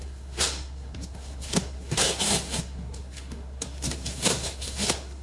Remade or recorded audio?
remade